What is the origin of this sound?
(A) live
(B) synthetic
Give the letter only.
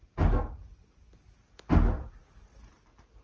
A